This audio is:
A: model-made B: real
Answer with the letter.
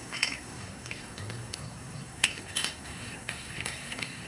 A